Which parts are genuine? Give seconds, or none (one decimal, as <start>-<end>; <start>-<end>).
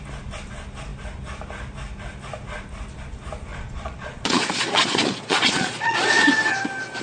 0.0-3.5; 6.3-7.0